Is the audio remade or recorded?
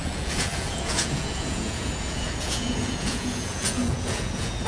remade